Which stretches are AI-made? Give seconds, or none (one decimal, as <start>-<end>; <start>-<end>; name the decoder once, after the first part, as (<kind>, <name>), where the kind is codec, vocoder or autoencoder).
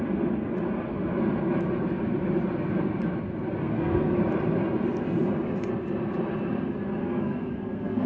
3.6-4.2 (codec, SNAC); 7.0-8.1